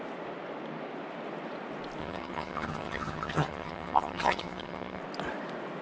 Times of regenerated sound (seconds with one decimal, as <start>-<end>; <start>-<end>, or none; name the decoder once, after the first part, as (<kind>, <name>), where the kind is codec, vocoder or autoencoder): 2.0-5.0 (vocoder, HiFi-GAN)